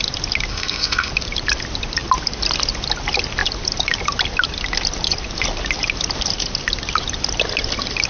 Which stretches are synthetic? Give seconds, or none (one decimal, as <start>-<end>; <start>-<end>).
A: 0.5-1.1